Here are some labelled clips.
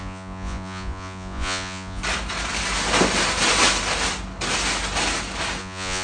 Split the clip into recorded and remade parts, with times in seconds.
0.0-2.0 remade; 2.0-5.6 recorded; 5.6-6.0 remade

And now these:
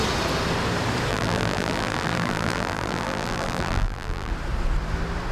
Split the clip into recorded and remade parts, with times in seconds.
0.0-1.1 recorded; 1.1-4.3 remade; 4.3-5.3 recorded